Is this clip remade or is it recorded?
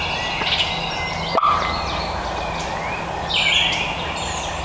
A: recorded